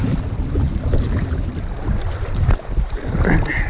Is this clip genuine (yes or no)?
yes